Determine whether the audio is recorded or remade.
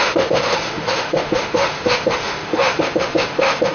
remade